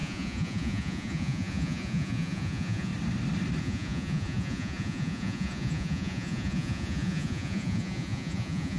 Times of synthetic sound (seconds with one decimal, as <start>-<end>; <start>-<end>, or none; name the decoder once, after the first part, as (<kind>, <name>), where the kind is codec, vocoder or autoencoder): 0.0-2.9 (vocoder, Vocos); 3.6-8.8